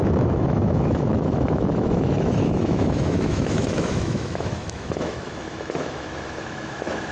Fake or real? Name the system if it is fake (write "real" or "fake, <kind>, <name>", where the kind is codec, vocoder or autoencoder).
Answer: fake, autoencoder, DAC-VAE